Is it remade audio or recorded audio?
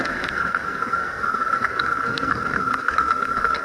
remade